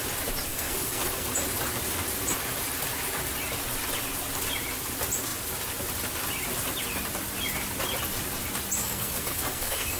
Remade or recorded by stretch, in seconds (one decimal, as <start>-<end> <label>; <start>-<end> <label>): 0.0-0.5 recorded; 0.5-1.3 remade; 1.3-8.8 recorded; 8.8-10.0 remade